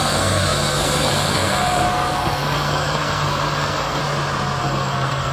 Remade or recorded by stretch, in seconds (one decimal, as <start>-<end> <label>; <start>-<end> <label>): 0.0-4.0 remade; 4.0-4.6 recorded; 4.6-5.3 remade